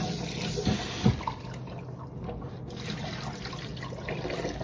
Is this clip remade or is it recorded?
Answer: recorded